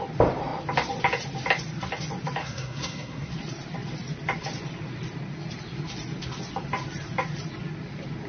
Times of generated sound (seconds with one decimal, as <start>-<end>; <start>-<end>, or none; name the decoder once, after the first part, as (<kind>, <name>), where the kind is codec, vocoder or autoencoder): 2.4-3.3 (codec, SNAC)